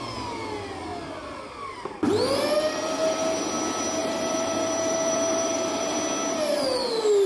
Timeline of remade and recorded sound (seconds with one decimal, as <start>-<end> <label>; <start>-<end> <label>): 0.0-4.0 recorded; 4.0-6.0 remade; 6.0-7.3 recorded